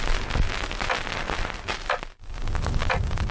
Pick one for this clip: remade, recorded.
recorded